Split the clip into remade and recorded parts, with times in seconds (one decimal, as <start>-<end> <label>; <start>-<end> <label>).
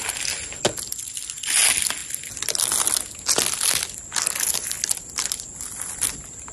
0.0-6.5 recorded